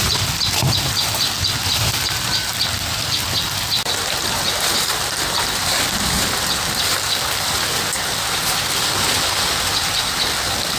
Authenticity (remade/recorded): recorded